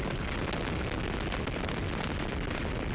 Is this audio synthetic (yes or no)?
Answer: no